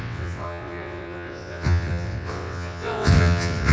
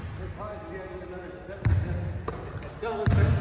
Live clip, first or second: second